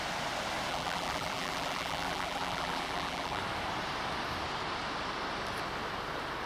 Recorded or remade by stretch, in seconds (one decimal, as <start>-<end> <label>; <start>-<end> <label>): 0.0-0.7 recorded; 0.7-3.4 remade; 3.4-6.5 recorded